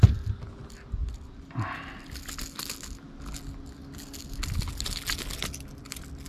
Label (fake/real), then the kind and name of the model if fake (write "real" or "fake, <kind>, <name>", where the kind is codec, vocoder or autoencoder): real